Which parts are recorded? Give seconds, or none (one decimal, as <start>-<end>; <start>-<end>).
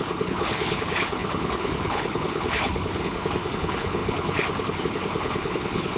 none